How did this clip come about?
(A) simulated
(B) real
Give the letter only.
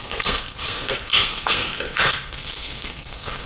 A